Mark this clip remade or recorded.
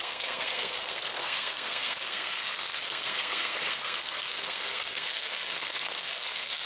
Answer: remade